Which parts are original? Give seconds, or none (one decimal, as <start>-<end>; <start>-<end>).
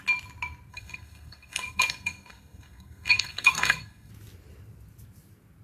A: 0.0-0.7; 4.1-5.6